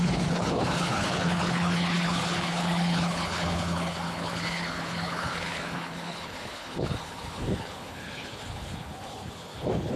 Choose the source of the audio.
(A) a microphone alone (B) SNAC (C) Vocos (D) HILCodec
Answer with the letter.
D